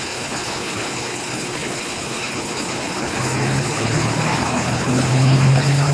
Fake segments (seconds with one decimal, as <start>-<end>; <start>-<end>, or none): 0.0-5.9